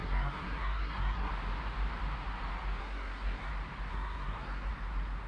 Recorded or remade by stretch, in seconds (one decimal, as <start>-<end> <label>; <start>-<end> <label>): 0.0-1.3 remade; 1.3-2.8 recorded; 2.8-3.5 remade; 3.5-3.9 recorded; 3.9-4.7 remade; 4.7-5.3 recorded